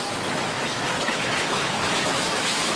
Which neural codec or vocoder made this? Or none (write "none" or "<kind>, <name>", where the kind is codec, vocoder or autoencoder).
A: autoencoder, DAC-VAE